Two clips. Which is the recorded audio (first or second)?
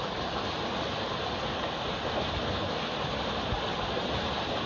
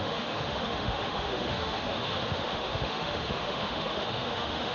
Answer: first